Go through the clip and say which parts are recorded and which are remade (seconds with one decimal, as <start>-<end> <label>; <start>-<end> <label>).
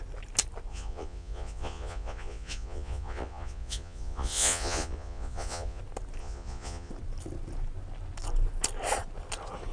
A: 0.0-0.7 recorded; 0.7-5.8 remade; 5.8-6.2 recorded; 6.2-6.9 remade; 6.9-9.7 recorded